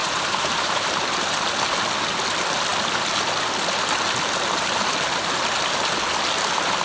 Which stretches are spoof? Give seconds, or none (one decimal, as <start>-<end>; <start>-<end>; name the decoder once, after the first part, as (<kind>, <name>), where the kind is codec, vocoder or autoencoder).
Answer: 0.0-1.1 (vocoder, BigVGAN v2)

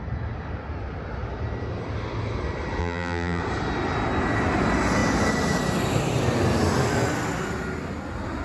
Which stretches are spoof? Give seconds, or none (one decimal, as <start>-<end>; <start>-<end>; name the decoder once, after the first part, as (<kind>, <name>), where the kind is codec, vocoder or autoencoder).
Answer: 2.8-3.4 (vocoder, BigVGAN v2)

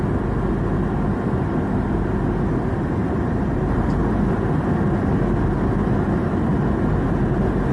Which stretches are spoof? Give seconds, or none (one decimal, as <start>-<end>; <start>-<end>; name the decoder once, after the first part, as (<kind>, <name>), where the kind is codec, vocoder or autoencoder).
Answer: 3.0-4.3 (vocoder, BigVGAN v2)

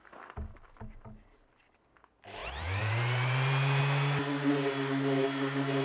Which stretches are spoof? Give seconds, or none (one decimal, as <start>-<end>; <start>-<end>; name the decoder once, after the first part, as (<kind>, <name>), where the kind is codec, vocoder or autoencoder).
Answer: 2.4-3.8 (vocoder, BigVGAN v2)

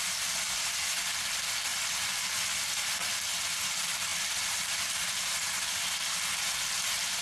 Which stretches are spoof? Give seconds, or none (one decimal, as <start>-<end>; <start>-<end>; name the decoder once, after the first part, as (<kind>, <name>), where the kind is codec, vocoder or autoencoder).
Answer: 1.7-3.3 (vocoder, BigVGAN v2); 4.1-7.2

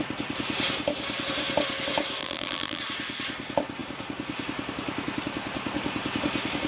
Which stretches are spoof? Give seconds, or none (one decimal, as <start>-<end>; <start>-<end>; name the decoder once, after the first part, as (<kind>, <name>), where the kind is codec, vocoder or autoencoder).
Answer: 2.2-2.8 (vocoder, BigVGAN v2)

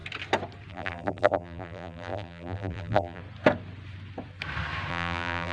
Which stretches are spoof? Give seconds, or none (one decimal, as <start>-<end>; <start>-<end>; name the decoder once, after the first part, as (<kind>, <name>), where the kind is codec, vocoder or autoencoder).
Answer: 0.7-3.2 (vocoder, BigVGAN v2); 4.9-5.5

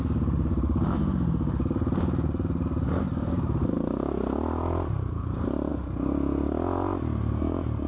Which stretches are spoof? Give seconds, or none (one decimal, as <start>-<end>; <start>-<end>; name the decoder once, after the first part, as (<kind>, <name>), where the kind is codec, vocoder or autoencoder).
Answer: none